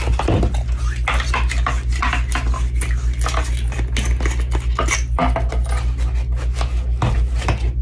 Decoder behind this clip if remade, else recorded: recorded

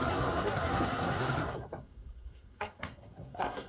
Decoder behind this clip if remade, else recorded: remade, codec, SNAC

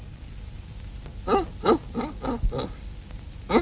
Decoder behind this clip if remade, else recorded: recorded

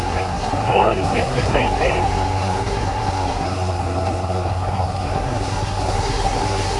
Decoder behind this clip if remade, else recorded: remade, codec, SNAC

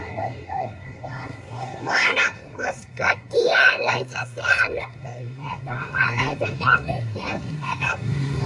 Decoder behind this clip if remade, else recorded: remade, codec, SNAC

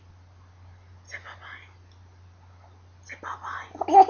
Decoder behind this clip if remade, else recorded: recorded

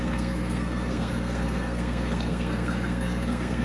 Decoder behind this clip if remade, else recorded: remade, codec, SNAC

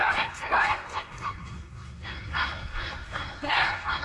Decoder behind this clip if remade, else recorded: remade, codec, SNAC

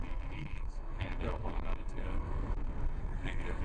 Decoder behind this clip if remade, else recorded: remade, codec, SNAC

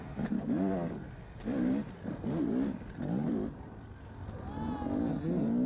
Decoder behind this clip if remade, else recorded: recorded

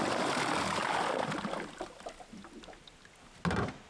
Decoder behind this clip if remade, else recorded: recorded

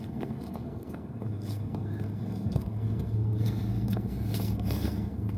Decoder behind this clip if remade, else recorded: remade, codec, SNAC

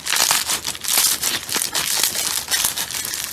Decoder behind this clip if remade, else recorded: recorded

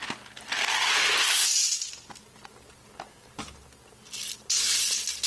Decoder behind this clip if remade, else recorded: recorded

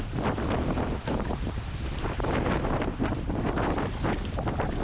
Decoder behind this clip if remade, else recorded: recorded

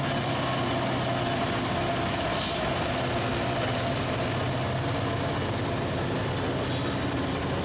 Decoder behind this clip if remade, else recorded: recorded